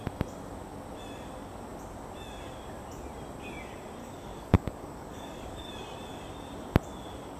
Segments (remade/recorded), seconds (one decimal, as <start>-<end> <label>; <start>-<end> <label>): 0.0-4.0 recorded; 4.0-5.7 remade; 5.7-7.4 recorded